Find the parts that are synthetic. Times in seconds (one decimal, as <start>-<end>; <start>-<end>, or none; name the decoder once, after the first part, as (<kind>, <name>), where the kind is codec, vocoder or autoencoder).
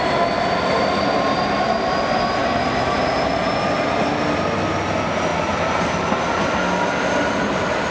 none